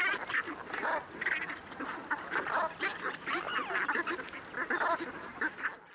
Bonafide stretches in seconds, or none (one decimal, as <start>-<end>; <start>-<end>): 0.0-2.0; 5.0-5.9